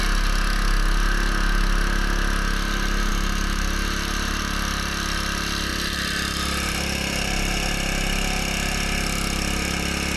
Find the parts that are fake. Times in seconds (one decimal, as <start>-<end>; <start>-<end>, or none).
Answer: 3.1-4.4; 5.7-7.7

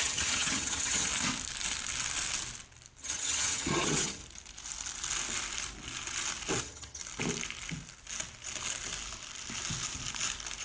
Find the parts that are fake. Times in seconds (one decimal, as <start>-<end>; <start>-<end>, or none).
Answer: 0.0-1.1; 3.0-4.2; 6.6-7.0

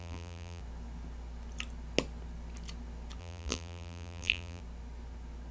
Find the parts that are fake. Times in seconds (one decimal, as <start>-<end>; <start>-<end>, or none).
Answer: 0.0-0.6; 3.2-4.6